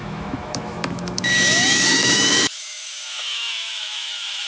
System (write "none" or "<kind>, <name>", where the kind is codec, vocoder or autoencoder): autoencoder, DAC-VAE